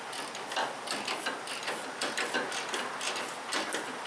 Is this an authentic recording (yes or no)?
yes